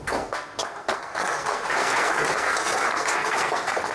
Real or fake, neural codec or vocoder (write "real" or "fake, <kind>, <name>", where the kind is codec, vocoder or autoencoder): fake, codec, SNAC